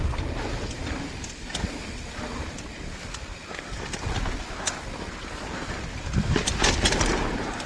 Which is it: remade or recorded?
recorded